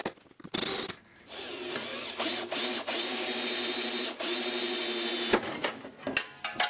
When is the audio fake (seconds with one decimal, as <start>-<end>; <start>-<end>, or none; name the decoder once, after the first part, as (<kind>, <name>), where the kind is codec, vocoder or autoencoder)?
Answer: none